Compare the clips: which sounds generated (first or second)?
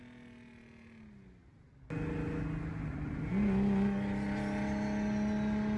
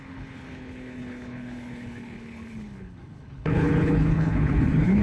second